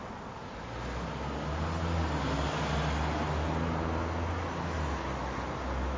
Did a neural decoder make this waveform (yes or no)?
no